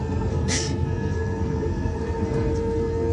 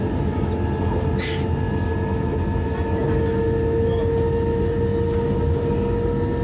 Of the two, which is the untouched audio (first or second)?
second